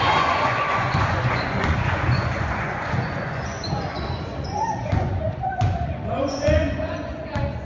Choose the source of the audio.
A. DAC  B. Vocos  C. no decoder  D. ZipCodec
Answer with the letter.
B